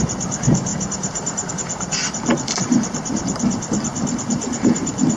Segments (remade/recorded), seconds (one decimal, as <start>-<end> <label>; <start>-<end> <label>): 0.0-5.2 remade